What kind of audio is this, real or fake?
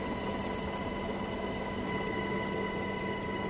real